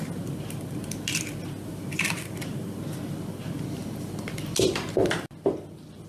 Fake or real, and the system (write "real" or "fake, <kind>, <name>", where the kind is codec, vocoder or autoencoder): real